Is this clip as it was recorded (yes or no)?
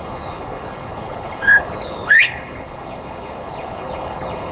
no